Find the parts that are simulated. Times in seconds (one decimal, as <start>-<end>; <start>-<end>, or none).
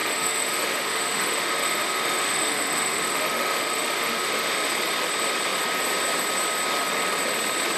0.0-4.7